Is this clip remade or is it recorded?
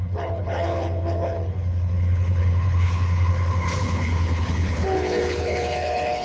remade